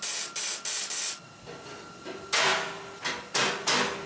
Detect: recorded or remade recorded